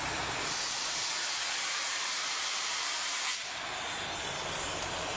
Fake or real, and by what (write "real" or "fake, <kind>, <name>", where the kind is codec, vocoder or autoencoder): fake, vocoder, BigVGAN v2